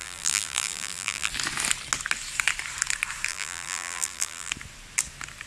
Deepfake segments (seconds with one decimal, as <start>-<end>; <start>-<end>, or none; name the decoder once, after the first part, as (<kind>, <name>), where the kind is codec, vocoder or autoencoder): 0.0-1.3 (vocoder, BigVGAN v2); 3.3-4.5